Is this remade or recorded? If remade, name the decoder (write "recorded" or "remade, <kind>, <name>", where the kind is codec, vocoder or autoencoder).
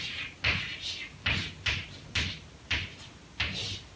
recorded